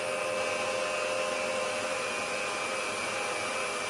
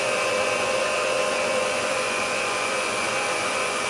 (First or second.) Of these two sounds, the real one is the first